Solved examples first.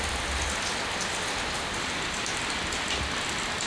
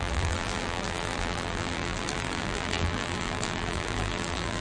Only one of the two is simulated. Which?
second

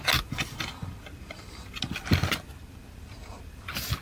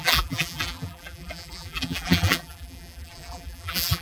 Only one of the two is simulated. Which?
second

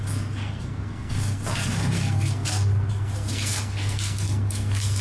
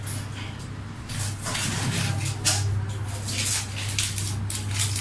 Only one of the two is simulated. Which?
first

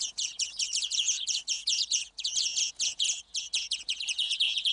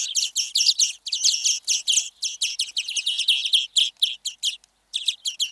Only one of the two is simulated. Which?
first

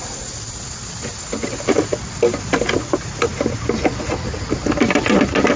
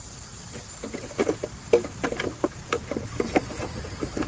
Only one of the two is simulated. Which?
second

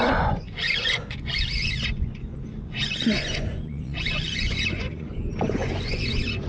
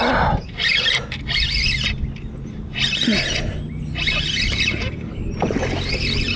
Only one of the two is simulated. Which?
first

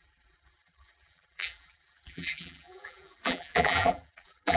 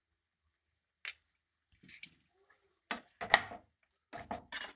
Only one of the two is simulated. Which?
first